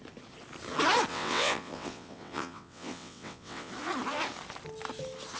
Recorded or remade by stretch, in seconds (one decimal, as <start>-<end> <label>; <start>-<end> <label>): 0.0-1.1 recorded; 1.1-3.7 remade; 3.7-5.4 recorded